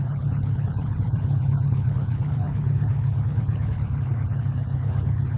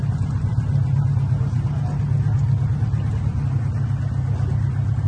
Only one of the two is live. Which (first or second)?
second